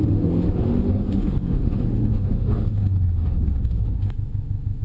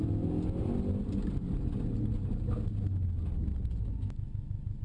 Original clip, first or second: second